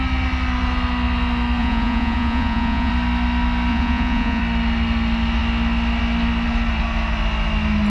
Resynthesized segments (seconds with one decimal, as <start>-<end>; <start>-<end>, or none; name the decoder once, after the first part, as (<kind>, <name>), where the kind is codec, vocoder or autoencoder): 1.6-2.9 (vocoder, Vocos); 3.7-4.4